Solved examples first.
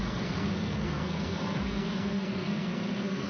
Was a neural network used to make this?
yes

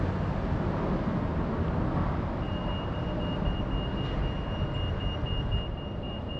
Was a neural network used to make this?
no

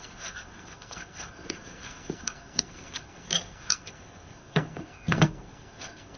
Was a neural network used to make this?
yes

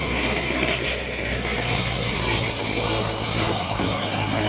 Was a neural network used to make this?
yes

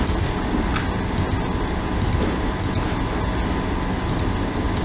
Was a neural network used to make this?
no